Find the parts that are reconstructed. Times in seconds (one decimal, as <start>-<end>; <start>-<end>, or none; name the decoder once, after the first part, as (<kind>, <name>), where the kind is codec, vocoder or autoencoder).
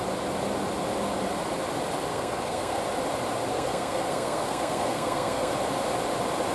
2.1-2.8 (codec, SNAC); 3.5-5.5